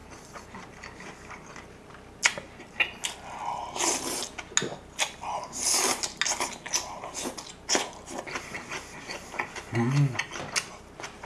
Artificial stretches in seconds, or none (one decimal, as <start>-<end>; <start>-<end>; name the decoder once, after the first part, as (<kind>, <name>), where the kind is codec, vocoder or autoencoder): none